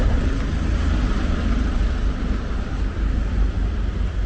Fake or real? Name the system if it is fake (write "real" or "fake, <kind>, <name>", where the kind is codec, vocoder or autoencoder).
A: real